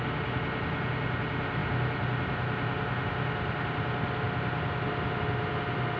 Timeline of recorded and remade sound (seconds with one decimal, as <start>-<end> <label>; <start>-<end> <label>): 0.0-6.0 recorded